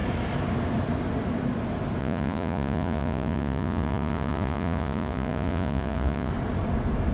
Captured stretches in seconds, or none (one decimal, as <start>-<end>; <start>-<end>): 0.0-2.0; 6.3-7.1